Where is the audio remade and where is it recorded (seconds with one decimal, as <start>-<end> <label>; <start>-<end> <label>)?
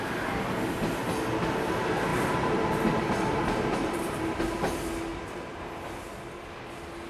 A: 0.0-2.1 recorded; 2.1-4.4 remade; 4.4-5.1 recorded; 5.1-5.9 remade; 5.9-7.1 recorded